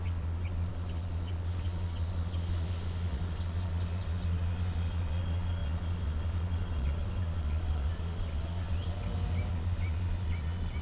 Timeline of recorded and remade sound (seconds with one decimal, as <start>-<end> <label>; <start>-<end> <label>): 0.0-9.0 remade; 9.0-9.5 recorded; 9.5-10.8 remade